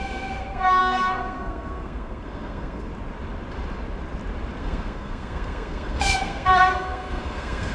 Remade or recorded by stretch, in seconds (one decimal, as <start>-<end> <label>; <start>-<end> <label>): 0.0-2.9 remade; 2.9-4.6 recorded; 4.6-7.7 remade